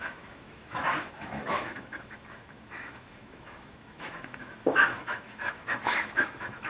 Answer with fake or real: fake